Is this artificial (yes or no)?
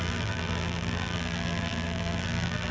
yes